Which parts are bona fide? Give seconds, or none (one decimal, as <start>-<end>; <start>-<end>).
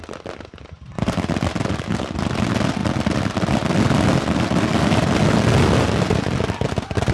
0.0-7.1